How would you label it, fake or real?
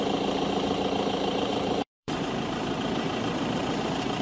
fake